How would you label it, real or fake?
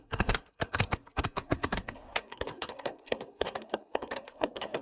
fake